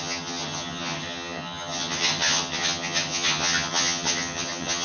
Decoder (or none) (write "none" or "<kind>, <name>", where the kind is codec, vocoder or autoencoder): vocoder, HiFi-GAN